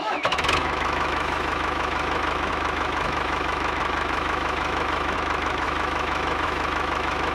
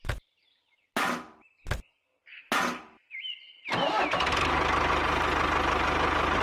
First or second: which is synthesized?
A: first